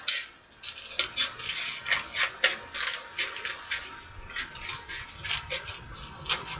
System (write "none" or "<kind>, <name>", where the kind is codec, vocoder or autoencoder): none